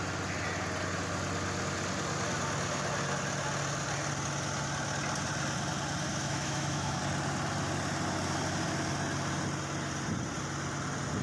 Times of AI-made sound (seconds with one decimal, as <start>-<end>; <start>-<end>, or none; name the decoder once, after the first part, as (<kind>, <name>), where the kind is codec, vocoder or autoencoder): 6.1-7.0 (autoencoder, DAC-VAE)